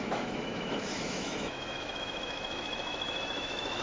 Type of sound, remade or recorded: remade